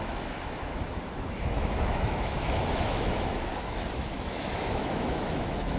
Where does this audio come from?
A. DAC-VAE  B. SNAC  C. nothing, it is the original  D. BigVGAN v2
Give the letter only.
A